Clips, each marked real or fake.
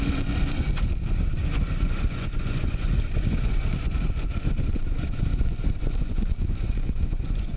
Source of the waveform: fake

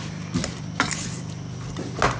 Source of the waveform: real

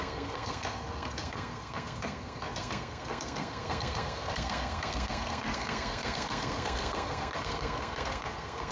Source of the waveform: fake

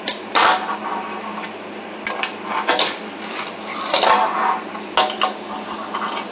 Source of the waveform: real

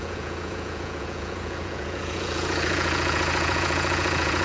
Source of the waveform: fake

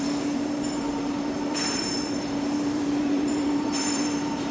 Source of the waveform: fake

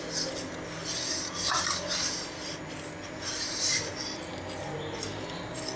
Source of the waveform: real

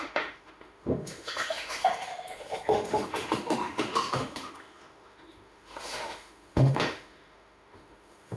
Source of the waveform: fake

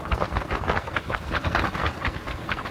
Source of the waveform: fake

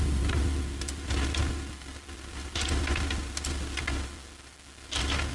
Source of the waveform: real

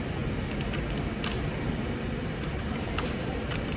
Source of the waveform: real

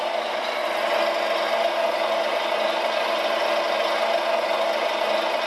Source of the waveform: real